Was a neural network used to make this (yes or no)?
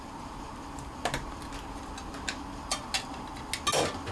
no